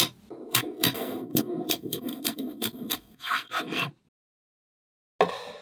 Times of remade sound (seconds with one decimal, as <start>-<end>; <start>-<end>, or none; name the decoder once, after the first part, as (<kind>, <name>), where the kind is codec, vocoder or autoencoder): 0.5-3.9 (codec, SNAC)